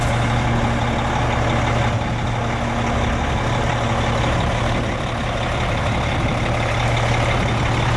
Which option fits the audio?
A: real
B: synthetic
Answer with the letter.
A